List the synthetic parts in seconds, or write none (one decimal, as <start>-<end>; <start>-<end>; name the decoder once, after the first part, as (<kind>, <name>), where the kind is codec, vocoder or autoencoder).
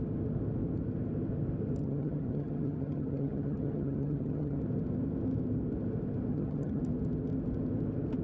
1.8-4.6 (vocoder, HiFi-GAN); 6.3-6.8